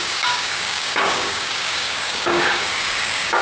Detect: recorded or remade remade